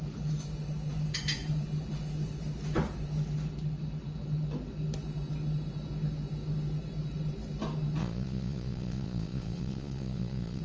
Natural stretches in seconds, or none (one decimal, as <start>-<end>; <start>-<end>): 0.0-8.0